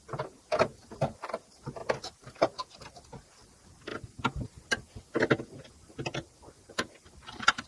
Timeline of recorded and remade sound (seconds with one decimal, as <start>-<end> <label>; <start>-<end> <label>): 0.0-7.7 remade